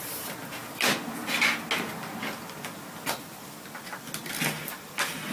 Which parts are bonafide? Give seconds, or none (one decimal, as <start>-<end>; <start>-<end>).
0.0-5.3